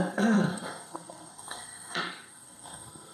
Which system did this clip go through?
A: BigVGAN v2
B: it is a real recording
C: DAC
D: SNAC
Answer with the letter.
D